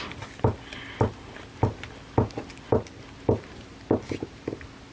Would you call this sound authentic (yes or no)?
yes